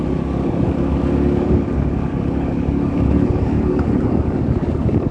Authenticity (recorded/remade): remade